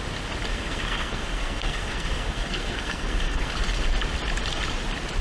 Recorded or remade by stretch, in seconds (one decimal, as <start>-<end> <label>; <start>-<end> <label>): 0.0-0.5 recorded; 0.5-3.5 remade; 3.5-5.2 recorded